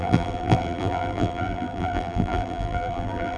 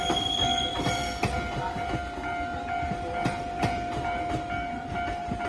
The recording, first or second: second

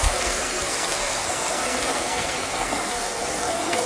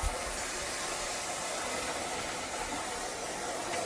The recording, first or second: second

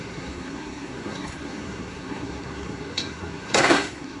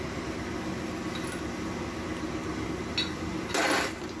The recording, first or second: second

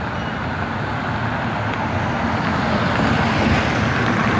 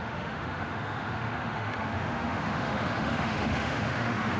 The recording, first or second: first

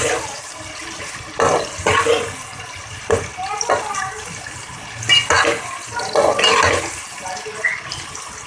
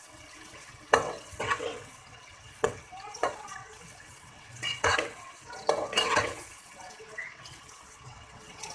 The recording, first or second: first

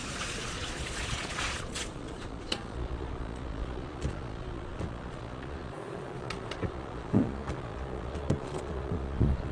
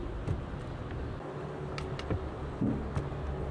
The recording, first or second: second